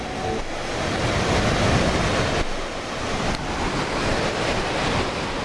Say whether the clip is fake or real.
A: real